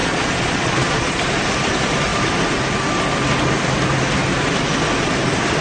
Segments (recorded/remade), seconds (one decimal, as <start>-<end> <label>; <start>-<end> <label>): 0.0-1.2 remade; 1.2-5.6 recorded